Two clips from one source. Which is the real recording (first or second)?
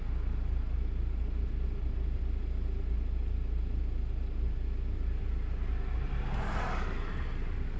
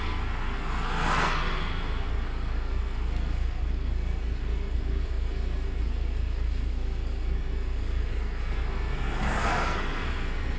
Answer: first